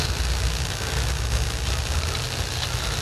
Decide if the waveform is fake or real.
real